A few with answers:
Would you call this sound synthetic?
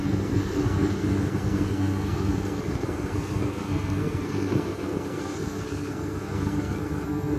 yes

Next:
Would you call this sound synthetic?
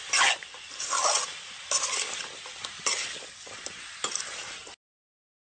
no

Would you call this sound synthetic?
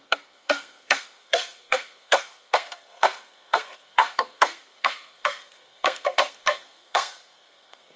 yes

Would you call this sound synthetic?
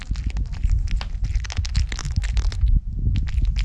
no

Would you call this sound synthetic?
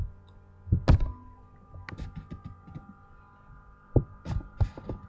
no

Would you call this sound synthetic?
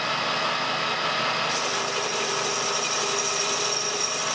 no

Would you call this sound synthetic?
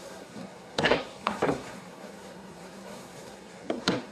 yes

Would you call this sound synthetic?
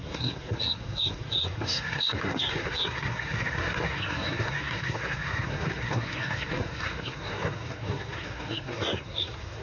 yes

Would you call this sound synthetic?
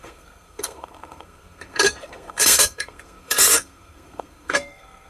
yes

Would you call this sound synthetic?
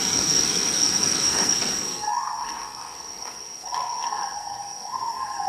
yes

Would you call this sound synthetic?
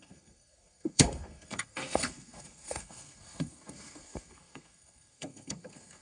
yes